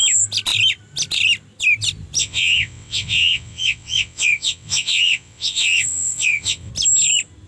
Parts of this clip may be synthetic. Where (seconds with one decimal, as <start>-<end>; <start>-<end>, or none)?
2.2-6.7